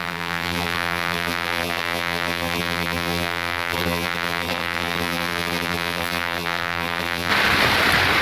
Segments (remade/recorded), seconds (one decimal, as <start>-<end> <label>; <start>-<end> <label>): 0.0-7.3 remade; 7.3-8.2 recorded